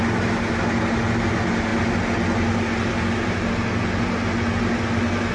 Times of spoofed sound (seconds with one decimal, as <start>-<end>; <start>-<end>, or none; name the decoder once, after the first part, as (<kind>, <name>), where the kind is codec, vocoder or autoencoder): none